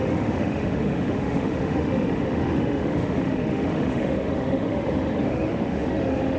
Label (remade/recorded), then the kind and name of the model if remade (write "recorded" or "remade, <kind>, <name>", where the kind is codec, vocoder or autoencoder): remade, autoencoder, DAC-VAE